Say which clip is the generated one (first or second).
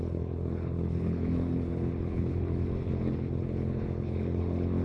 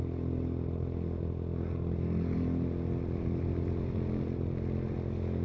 first